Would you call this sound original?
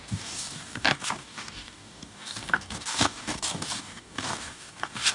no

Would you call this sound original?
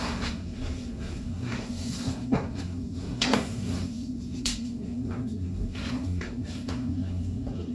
no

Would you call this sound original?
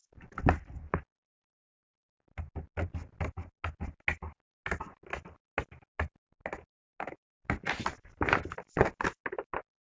yes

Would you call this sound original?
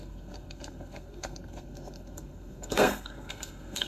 no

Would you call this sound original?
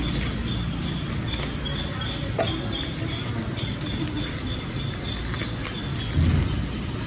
yes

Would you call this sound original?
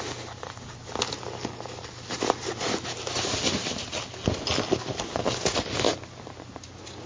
yes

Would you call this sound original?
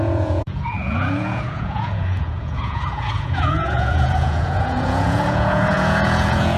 no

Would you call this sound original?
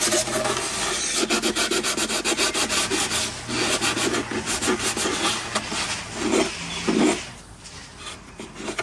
yes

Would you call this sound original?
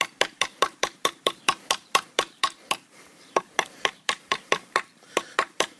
no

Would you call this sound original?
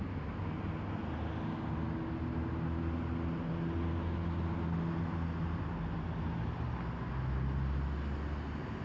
yes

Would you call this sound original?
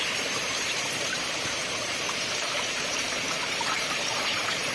no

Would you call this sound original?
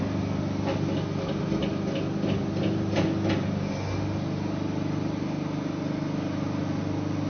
yes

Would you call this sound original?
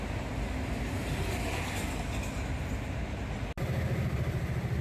yes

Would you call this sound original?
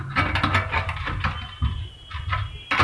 yes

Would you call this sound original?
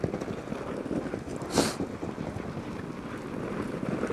yes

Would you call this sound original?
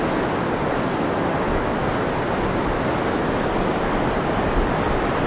yes